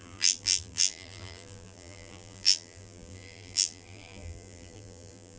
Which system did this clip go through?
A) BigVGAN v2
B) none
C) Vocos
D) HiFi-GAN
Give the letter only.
A